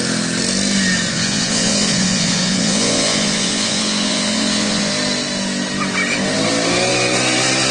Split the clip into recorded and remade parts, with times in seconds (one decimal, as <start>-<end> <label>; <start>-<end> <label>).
0.0-1.1 recorded; 1.1-4.9 remade; 4.9-7.7 recorded